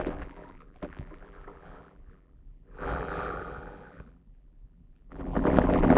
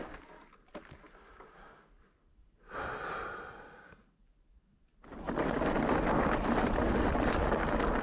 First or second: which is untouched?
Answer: second